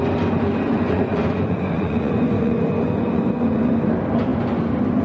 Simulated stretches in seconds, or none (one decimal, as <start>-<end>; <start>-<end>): 0.7-3.7